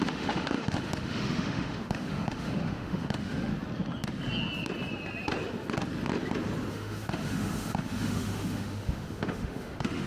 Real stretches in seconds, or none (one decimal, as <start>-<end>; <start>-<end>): 3.5-6.7